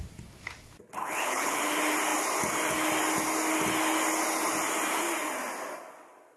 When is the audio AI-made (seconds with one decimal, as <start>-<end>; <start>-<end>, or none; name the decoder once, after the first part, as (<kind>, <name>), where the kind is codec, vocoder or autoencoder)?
1.0-1.6 (codec, HILCodec)